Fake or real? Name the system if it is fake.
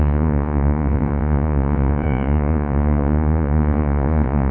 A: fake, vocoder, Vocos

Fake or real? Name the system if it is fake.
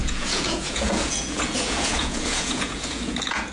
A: fake, vocoder, Vocos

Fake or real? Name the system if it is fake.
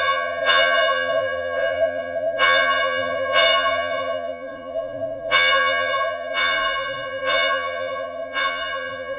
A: fake, vocoder, Vocos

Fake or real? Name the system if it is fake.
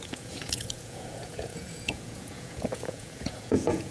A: fake, vocoder, Vocos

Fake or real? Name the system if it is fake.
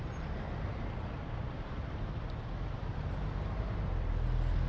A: real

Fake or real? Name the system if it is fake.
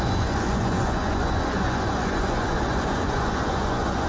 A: fake, vocoder, Vocos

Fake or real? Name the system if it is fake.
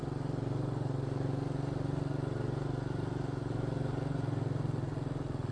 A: real